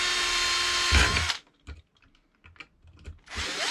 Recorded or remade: recorded